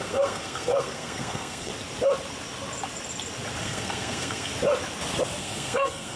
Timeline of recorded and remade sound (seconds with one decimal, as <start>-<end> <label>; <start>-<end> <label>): 0.0-1.7 remade; 1.7-3.6 recorded; 3.6-4.5 remade; 4.5-5.4 recorded; 5.4-6.2 remade